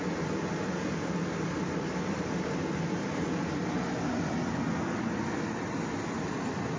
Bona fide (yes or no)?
yes